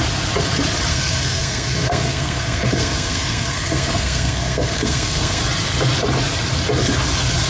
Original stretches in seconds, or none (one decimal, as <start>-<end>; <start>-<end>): 0.0-0.9; 5.4-7.5